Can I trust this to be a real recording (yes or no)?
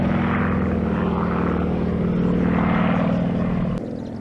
yes